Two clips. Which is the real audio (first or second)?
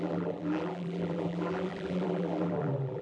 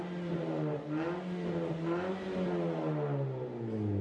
second